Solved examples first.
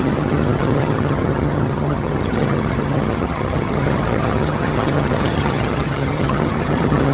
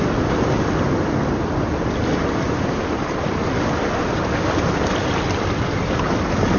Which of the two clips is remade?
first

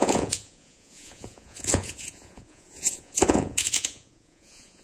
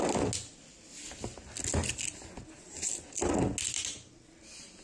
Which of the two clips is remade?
first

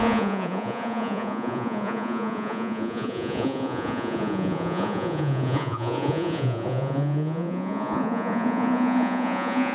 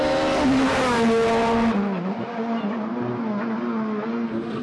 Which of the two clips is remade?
first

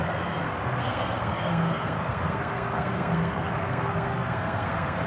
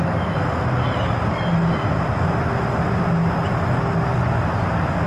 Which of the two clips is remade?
first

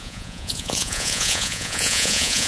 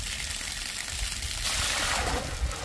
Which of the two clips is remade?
first